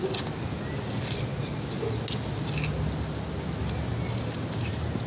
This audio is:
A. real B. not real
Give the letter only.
A